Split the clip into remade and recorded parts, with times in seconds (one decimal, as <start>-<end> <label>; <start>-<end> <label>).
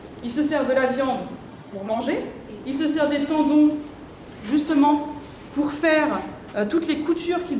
0.0-1.5 recorded; 1.5-2.0 remade; 2.0-7.6 recorded